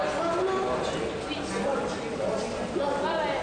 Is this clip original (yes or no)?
yes